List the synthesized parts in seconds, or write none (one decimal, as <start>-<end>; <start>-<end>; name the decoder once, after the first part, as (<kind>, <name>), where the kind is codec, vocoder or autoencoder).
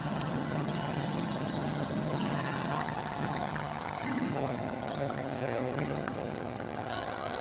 0.0-7.4 (vocoder, HiFi-GAN)